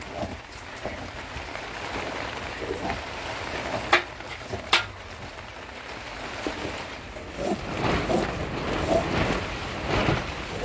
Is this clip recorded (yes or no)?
yes